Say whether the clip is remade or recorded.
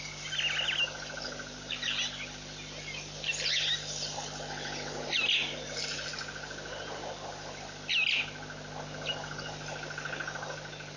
recorded